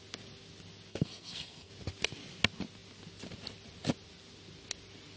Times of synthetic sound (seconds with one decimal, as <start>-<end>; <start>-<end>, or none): 0.9-1.7